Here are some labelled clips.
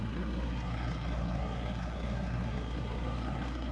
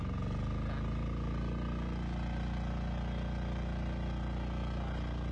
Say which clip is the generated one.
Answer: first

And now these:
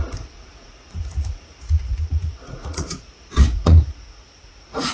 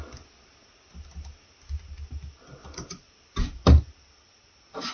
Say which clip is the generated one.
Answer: first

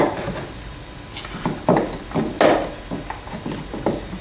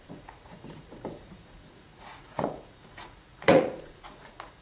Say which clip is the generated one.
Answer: second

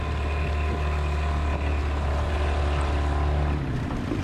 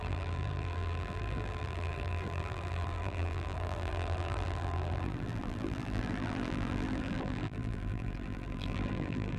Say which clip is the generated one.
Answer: second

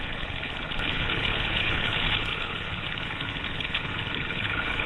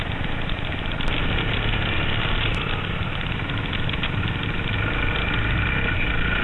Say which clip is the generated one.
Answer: first